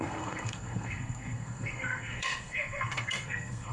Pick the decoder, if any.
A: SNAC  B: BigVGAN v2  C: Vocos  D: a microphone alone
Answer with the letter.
A